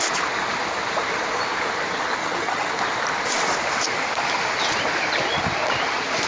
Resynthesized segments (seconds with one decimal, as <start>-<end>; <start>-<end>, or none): 2.2-2.7